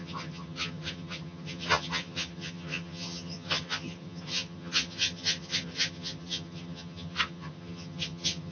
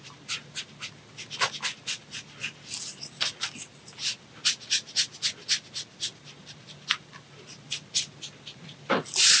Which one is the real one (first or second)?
second